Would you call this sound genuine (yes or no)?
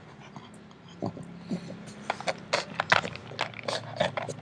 yes